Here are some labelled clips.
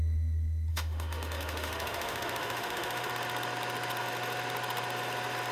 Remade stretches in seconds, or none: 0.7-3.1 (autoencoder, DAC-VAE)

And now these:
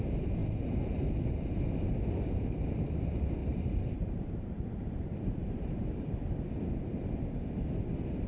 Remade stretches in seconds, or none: 3.4-6.3 (vocoder, BigVGAN v2)

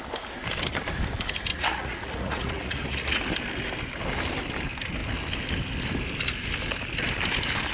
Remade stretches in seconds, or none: 1.5-3.2 (vocoder, Vocos)